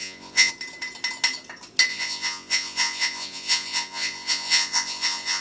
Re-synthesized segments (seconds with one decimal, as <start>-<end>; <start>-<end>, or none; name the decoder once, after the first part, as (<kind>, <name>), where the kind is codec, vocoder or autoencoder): 0.0-0.5 (vocoder, Vocos); 1.9-5.4